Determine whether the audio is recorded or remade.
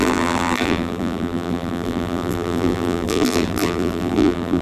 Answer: remade